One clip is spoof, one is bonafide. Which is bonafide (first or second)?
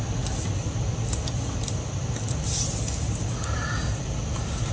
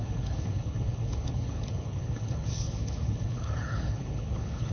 first